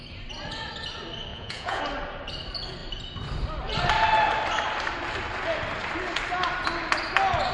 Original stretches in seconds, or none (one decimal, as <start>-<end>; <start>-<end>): 0.0-1.3; 1.8-7.5